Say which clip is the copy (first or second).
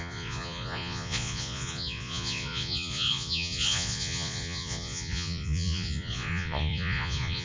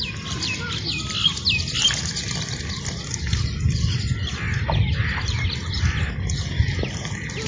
first